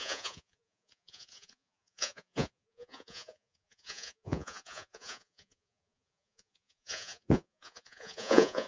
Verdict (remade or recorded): remade